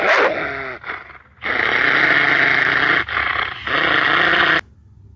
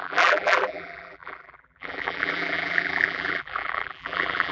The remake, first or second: second